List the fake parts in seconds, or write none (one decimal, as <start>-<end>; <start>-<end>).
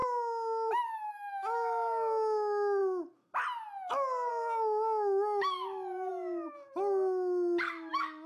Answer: 0.7-2.8; 4.3-8.3